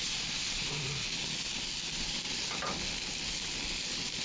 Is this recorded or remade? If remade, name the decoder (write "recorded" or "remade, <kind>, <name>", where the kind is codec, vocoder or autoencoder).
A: recorded